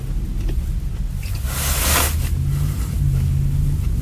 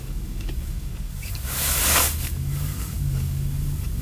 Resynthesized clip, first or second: second